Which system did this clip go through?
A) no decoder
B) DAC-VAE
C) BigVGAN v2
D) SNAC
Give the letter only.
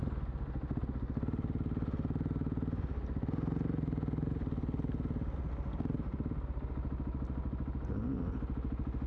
A